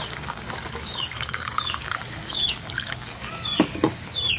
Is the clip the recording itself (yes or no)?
no